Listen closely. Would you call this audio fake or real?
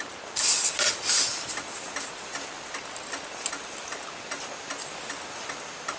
real